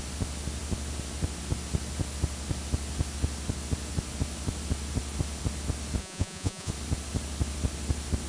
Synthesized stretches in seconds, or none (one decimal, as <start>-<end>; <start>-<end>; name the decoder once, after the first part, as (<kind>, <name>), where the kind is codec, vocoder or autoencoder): 6.0-6.7 (vocoder, Vocos)